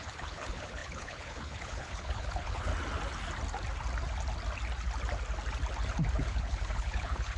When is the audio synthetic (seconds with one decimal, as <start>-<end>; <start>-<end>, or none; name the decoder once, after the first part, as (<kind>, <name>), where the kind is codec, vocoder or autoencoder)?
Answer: 0.0-2.7 (codec, HILCodec); 6.2-7.4